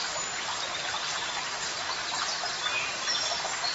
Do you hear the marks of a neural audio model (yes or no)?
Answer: no